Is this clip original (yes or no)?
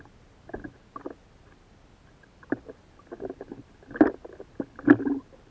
yes